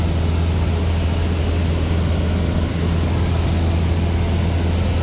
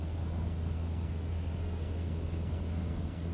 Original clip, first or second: first